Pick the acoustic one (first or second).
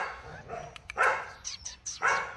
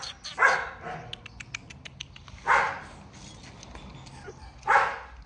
second